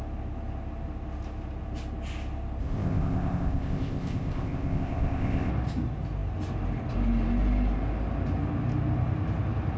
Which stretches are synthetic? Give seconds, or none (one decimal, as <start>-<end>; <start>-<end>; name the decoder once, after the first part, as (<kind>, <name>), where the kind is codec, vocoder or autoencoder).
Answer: 2.6-5.5 (codec, ZipCodec)